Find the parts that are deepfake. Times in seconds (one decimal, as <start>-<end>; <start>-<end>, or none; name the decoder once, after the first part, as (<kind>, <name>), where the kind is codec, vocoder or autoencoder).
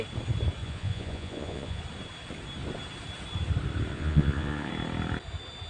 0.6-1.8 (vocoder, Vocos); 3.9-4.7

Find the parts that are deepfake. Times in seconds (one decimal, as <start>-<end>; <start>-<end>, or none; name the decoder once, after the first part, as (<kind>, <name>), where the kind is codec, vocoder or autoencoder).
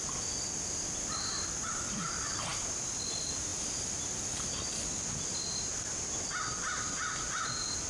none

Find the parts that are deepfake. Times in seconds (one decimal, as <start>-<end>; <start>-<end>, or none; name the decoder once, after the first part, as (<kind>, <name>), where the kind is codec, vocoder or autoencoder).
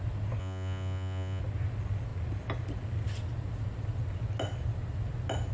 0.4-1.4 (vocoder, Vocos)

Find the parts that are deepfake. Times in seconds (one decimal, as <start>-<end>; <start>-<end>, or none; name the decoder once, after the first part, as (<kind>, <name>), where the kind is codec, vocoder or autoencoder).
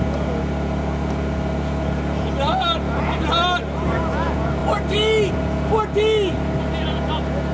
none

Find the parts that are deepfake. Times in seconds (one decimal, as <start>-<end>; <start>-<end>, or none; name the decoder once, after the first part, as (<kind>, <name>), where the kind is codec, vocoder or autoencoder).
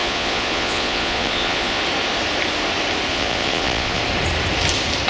0.0-1.8 (vocoder, Vocos); 3.1-4.0